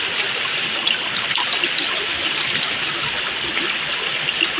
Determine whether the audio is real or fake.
real